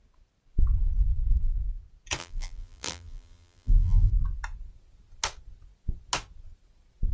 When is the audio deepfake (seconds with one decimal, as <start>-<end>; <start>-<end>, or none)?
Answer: 2.2-4.1